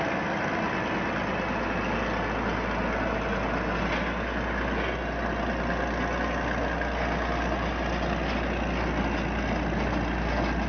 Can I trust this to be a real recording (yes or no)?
yes